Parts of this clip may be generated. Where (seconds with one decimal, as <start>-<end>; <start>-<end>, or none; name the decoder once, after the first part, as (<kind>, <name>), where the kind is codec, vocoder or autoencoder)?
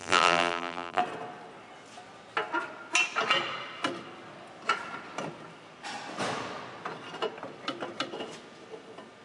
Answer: 0.0-1.0 (vocoder, BigVGAN v2)